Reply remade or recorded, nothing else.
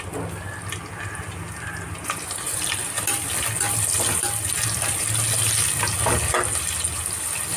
recorded